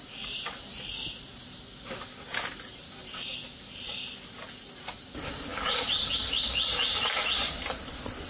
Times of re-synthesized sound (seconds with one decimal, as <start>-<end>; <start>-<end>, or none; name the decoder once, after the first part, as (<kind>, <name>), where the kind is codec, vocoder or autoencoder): none